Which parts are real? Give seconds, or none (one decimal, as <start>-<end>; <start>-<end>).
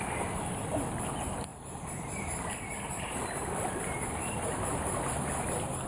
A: 0.0-1.5; 5.0-5.9